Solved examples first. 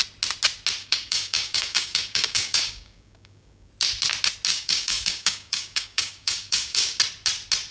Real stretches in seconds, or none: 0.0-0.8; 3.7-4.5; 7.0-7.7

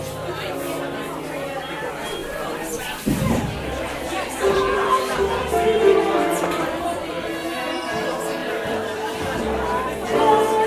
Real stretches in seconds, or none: 0.0-2.2; 7.1-8.4; 10.2-10.7

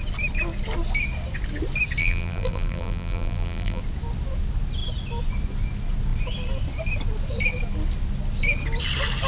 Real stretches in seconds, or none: 0.0-2.0; 3.8-9.3